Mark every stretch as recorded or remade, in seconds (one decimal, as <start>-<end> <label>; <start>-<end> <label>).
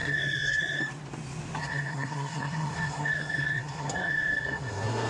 0.0-0.8 remade; 0.8-1.6 recorded; 1.6-5.1 remade